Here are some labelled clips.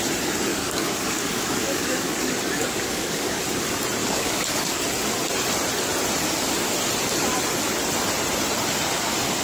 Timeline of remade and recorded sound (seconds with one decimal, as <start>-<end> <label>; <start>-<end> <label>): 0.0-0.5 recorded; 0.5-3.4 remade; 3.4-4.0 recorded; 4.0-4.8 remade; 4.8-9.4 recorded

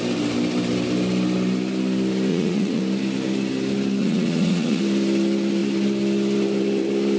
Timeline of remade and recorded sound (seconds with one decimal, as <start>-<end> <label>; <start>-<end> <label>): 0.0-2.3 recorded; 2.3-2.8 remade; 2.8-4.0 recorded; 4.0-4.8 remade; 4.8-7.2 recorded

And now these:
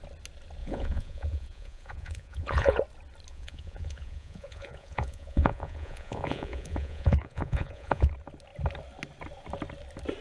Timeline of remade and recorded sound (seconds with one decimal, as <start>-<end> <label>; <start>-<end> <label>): 0.0-0.6 recorded; 0.6-2.8 remade; 2.8-3.3 recorded; 3.3-8.1 remade; 8.1-10.2 recorded

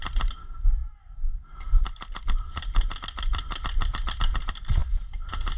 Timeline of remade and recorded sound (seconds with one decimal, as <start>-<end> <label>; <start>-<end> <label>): 0.0-5.6 recorded

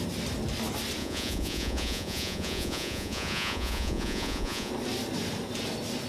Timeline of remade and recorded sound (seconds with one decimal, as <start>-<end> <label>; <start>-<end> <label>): 0.0-1.0 recorded; 1.0-4.7 remade; 4.7-6.1 recorded